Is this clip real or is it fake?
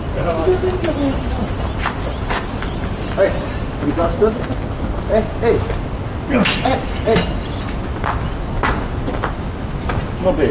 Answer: real